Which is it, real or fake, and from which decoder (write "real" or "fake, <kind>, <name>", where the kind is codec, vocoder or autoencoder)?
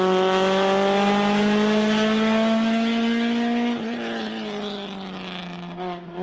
real